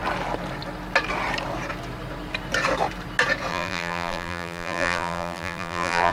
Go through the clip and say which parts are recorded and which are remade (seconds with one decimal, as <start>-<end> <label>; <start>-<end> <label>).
0.0-3.5 recorded; 3.5-6.1 remade